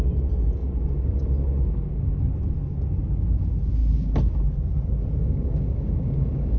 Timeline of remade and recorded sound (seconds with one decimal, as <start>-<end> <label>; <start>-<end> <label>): 0.0-5.2 recorded; 5.2-6.6 remade